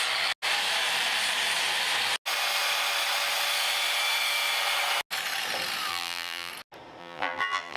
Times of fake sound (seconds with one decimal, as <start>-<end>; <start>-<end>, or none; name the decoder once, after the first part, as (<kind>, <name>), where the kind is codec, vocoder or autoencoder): 5.9-6.5 (vocoder, BigVGAN v2); 7.0-7.8